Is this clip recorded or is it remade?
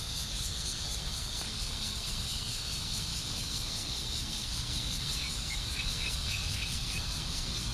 remade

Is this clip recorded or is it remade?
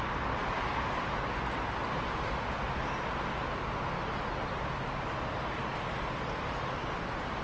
recorded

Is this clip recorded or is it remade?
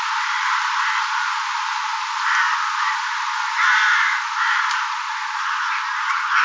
recorded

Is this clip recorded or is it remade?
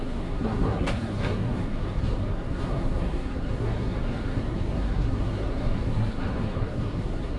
remade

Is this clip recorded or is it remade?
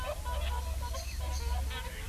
recorded